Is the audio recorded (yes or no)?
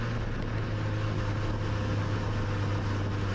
yes